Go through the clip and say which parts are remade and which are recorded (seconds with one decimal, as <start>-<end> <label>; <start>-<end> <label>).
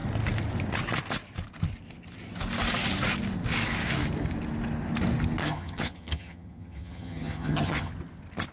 0.0-5.4 recorded; 5.4-7.9 remade; 7.9-8.5 recorded